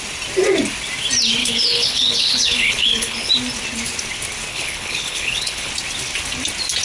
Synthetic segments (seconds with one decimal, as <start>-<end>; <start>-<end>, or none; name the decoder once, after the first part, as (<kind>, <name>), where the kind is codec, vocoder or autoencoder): 1.4-3.3 (codec, HILCodec); 4.5-5.7